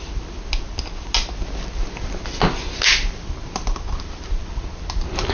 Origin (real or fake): real